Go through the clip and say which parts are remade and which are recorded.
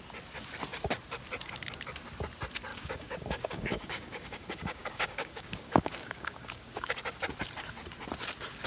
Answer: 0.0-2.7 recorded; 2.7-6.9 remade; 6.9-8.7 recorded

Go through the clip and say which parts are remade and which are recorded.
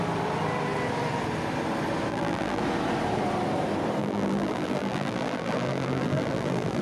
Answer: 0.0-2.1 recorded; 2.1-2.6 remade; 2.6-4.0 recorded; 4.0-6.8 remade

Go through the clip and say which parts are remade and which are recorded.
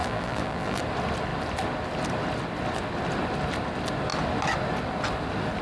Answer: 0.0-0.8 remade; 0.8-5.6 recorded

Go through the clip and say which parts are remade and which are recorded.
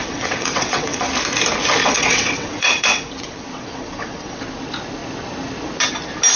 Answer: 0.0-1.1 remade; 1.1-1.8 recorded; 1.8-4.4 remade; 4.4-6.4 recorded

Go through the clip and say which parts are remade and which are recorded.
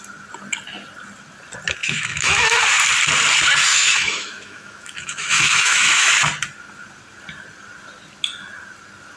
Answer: 0.0-1.8 recorded; 1.8-2.4 remade; 2.4-3.7 recorded; 3.7-6.1 remade; 6.1-9.2 recorded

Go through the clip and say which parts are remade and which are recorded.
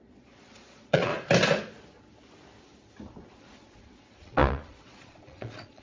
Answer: 0.0-1.1 remade; 1.1-3.3 recorded; 3.3-5.8 remade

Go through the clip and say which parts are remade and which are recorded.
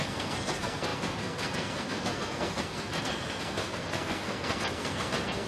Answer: 0.0-5.5 remade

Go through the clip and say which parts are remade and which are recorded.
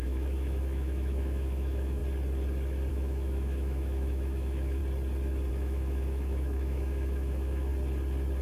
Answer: 0.0-2.0 remade; 2.0-2.9 recorded; 2.9-4.8 remade; 4.8-5.5 recorded; 5.5-7.7 remade; 7.7-8.4 recorded